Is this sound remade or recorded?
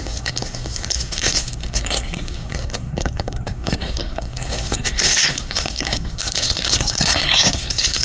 remade